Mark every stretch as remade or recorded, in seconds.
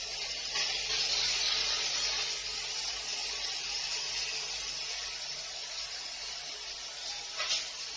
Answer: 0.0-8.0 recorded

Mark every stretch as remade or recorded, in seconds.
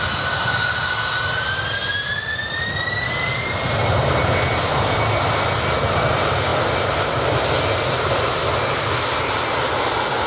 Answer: 0.0-10.3 recorded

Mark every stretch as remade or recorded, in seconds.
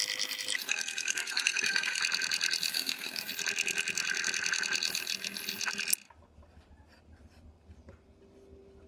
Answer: 0.0-0.6 recorded; 0.6-2.0 remade; 2.0-2.7 recorded; 2.7-3.3 remade; 3.3-8.9 recorded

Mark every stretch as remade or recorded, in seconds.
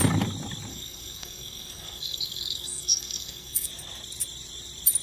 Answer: 0.0-0.7 recorded; 0.7-3.7 remade; 3.7-5.0 recorded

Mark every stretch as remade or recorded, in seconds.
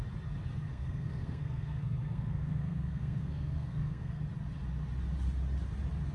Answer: 0.0-0.7 recorded; 0.7-4.2 remade; 4.2-6.1 recorded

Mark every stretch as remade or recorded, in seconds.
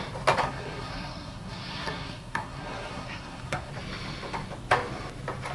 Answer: 0.0-0.4 recorded; 0.4-3.7 remade; 3.7-5.5 recorded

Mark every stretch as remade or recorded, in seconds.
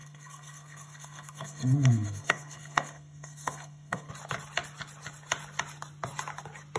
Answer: 0.0-4.1 remade; 4.1-6.8 recorded